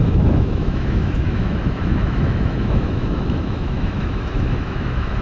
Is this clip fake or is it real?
fake